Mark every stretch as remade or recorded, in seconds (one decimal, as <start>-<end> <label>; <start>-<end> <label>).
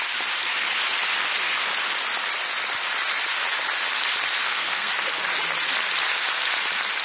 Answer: 0.0-4.4 recorded; 4.4-4.9 remade; 4.9-7.0 recorded